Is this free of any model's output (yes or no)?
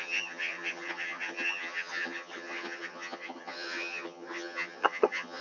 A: no